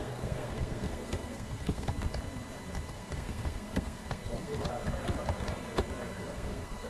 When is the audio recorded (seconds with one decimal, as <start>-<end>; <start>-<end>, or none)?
1.9-2.9; 4.7-6.2